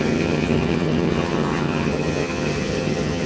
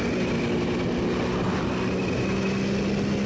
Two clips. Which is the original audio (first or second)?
second